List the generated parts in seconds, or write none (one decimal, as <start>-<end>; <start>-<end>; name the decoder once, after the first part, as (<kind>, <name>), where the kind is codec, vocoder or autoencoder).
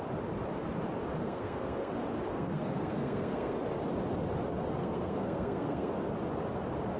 1.2-1.9 (codec, SNAC); 2.3-3.6; 4.8-5.9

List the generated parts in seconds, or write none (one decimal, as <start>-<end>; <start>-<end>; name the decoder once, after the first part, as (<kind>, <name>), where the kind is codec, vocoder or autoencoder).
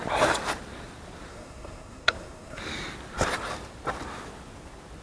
1.3-2.6 (codec, SNAC)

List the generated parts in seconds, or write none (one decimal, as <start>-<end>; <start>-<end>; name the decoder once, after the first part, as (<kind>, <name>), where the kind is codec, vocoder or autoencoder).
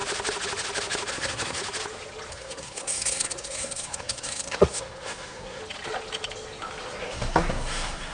1.1-1.6 (codec, SNAC); 2.3-5.6; 7.0-8.1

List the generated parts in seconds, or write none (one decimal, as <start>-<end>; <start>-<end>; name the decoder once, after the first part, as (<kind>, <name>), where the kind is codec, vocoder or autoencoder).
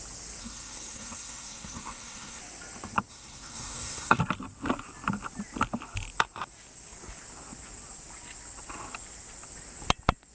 0.4-2.4 (codec, SNAC); 3.1-4.2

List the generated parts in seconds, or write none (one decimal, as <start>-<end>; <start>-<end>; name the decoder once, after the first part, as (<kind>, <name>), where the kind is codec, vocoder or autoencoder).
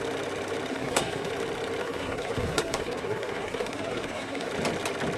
0.7-1.3 (codec, SNAC); 1.8-4.5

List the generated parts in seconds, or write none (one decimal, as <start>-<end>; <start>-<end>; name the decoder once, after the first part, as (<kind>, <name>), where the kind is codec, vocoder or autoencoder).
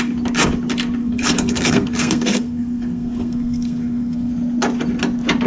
1.0-4.3 (codec, SNAC)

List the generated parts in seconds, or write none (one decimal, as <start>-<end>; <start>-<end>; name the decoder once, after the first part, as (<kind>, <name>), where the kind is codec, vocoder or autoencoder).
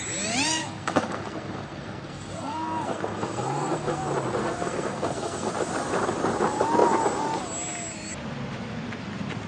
0.6-4.0 (codec, SNAC); 4.4-5.5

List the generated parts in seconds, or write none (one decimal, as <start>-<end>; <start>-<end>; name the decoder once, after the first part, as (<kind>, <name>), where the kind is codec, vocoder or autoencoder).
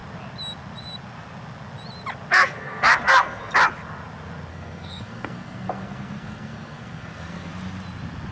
2.3-3.5 (codec, SNAC); 4.5-7.5